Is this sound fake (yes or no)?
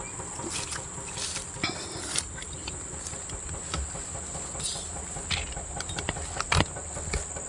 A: no